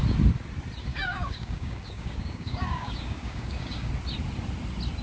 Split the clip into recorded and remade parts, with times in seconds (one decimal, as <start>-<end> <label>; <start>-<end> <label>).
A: 0.0-0.9 recorded; 0.9-3.9 remade; 3.9-5.0 recorded